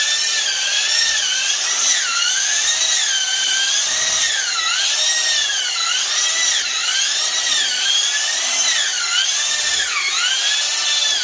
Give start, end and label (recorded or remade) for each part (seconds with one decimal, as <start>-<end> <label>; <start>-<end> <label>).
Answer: 0.0-0.6 recorded; 0.6-2.7 remade; 2.7-11.2 recorded